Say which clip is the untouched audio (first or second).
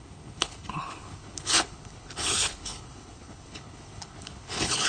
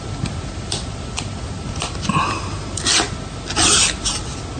second